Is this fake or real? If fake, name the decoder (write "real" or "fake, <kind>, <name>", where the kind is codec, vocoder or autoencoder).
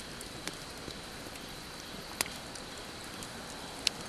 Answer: real